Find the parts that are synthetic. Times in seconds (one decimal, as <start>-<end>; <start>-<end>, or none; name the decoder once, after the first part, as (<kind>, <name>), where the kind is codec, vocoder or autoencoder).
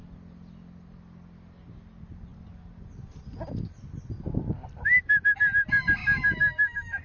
6.0-7.0 (autoencoder, DAC-VAE)